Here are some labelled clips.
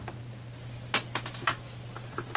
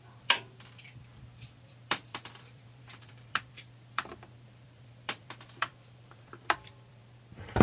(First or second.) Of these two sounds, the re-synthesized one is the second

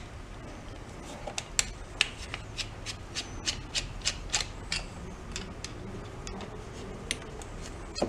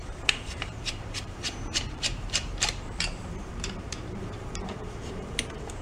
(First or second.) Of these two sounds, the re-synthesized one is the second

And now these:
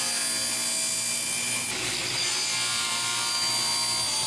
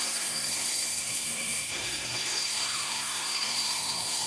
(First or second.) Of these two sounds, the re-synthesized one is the second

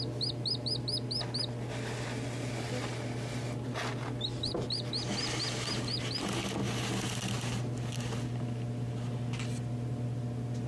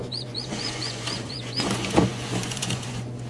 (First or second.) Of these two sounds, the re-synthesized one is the second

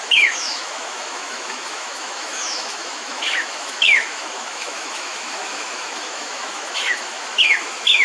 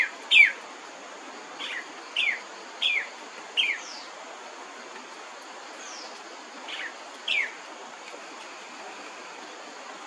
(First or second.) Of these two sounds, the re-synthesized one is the first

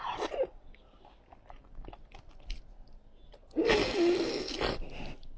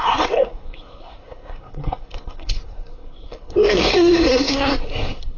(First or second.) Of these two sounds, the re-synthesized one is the second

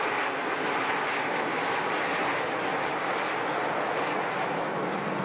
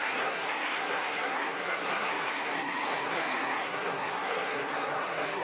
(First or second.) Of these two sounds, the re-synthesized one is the second